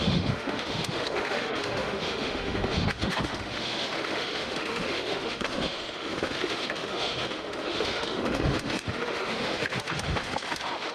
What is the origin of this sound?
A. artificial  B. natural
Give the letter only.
A